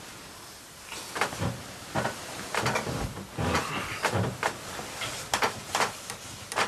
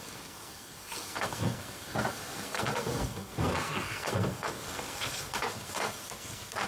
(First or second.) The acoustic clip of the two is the first